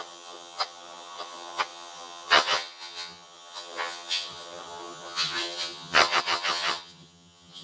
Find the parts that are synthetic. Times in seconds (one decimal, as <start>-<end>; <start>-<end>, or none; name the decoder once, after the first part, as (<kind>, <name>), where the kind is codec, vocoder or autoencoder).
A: 0.0-7.6 (vocoder, HiFi-GAN)